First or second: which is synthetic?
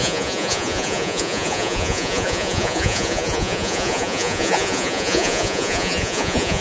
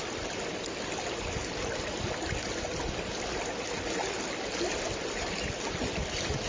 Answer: first